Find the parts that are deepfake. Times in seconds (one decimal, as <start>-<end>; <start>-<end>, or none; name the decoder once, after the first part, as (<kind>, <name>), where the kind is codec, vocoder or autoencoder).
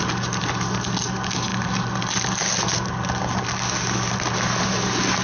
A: none